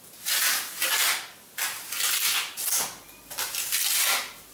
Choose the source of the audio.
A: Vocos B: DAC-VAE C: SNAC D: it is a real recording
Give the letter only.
D